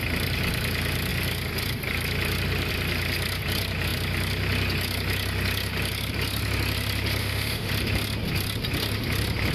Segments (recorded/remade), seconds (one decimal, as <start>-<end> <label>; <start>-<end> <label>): 0.0-7.2 recorded; 7.2-7.7 remade; 7.7-9.5 recorded